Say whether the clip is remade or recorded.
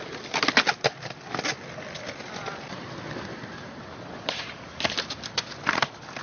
remade